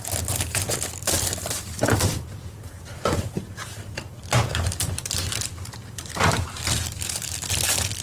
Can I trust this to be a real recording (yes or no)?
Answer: no